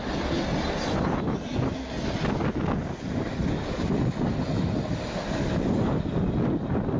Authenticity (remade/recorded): recorded